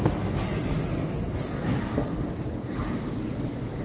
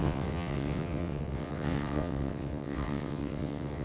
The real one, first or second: first